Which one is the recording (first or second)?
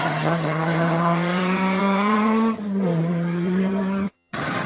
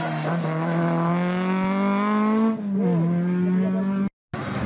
second